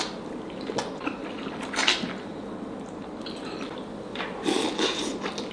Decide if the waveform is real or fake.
real